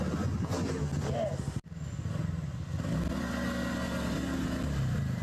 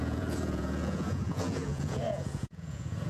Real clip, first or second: first